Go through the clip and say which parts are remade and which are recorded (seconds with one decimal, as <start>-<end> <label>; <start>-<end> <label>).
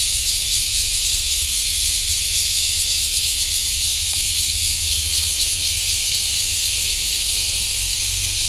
0.0-8.5 remade